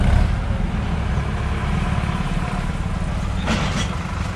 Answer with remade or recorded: recorded